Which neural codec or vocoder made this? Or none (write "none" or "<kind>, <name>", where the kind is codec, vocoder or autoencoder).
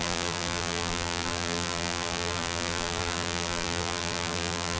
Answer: vocoder, BigVGAN v2